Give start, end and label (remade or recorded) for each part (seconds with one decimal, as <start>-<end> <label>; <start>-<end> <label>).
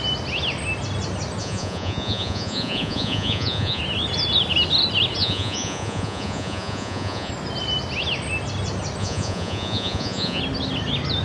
0.0-1.4 recorded; 1.4-3.8 remade; 3.8-5.2 recorded; 5.2-7.3 remade; 7.3-9.0 recorded; 9.0-10.4 remade; 10.4-11.2 recorded